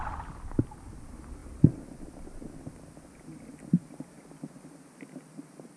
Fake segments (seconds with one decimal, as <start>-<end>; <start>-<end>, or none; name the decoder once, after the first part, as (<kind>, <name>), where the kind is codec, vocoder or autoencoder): none